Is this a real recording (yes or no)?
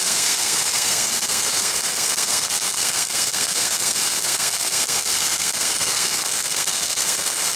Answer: no